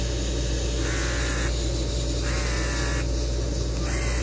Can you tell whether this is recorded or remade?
recorded